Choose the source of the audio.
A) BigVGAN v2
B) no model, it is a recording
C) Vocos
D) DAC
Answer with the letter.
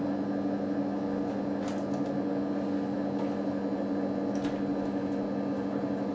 B